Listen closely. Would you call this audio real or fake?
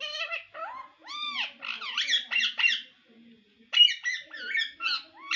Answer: real